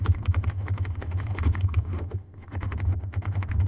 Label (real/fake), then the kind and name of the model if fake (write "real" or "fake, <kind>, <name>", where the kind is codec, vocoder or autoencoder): fake, autoencoder, DAC-VAE